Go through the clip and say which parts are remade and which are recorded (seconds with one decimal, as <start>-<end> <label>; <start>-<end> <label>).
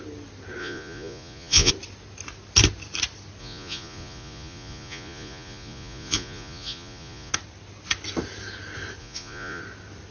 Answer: 0.0-0.6 recorded; 0.6-1.7 remade; 1.7-3.4 recorded; 3.4-7.3 remade; 7.3-9.0 recorded; 9.0-9.6 remade; 9.6-10.1 recorded